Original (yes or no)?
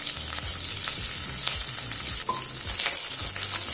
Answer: yes